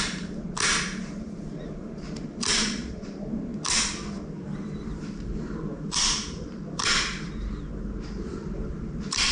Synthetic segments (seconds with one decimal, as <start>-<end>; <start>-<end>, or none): 0.0-3.5; 5.0-9.3